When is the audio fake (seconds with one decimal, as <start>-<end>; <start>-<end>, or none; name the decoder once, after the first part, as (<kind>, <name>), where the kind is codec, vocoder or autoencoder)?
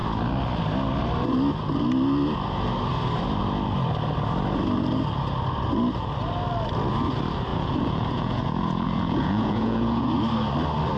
7.5-10.1 (vocoder, Vocos)